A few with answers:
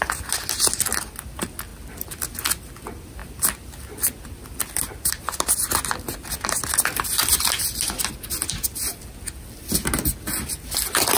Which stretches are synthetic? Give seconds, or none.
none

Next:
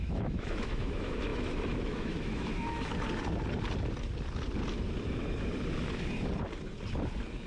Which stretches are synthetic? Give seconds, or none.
0.0-2.9 (autoencoder, DAC-VAE)